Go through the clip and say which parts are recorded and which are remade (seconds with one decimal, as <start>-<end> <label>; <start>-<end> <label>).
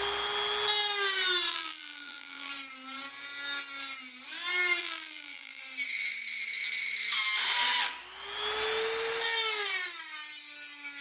0.0-1.5 recorded; 1.5-2.5 remade; 2.5-4.8 recorded; 4.8-5.6 remade; 5.6-11.0 recorded